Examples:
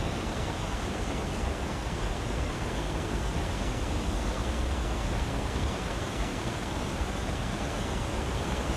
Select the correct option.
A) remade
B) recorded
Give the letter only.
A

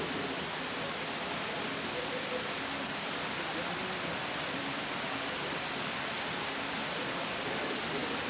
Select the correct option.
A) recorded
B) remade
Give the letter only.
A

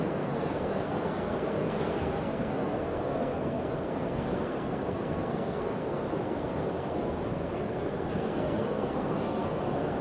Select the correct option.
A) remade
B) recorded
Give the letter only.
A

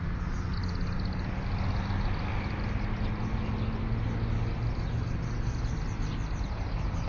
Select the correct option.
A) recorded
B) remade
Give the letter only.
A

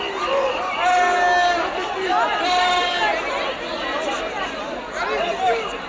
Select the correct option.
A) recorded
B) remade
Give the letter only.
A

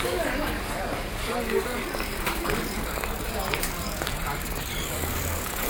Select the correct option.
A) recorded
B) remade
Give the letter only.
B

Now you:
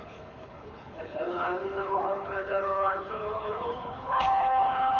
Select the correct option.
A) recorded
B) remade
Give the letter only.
B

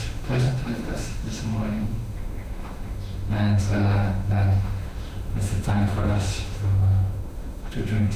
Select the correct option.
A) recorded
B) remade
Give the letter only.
B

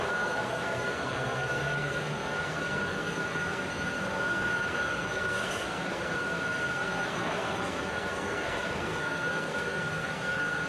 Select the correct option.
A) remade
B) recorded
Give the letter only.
A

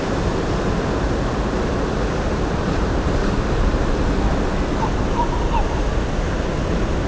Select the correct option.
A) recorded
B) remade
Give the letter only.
A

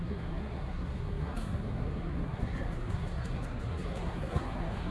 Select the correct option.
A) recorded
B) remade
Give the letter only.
B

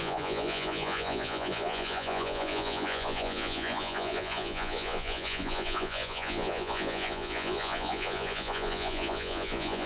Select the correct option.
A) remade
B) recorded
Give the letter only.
A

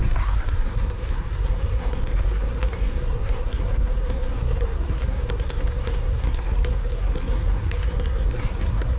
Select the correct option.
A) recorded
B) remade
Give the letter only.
B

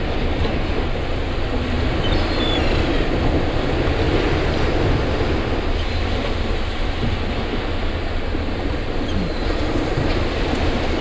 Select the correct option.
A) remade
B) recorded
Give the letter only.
B